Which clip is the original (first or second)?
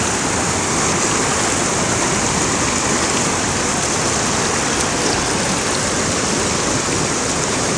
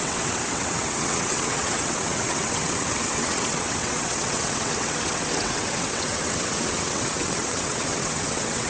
first